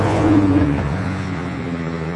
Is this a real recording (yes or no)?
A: no